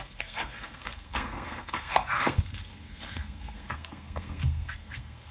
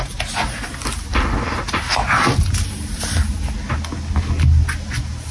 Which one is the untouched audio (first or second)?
second